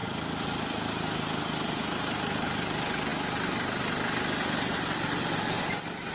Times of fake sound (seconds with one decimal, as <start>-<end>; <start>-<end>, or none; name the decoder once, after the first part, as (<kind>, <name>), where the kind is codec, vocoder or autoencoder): none